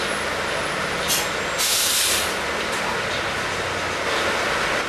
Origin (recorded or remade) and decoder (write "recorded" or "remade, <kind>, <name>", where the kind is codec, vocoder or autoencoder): recorded